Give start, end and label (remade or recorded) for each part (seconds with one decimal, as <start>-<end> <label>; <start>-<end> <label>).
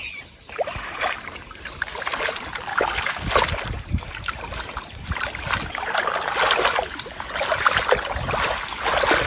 0.0-2.7 recorded; 2.7-3.3 remade; 3.3-9.3 recorded